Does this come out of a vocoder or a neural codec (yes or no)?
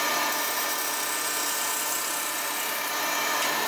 no